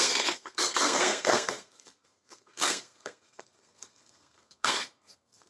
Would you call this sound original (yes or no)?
no